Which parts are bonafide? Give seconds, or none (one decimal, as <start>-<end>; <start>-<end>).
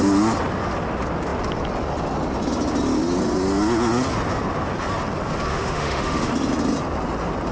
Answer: 0.0-5.5; 6.3-7.5